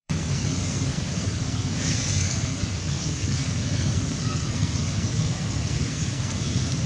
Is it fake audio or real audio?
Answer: fake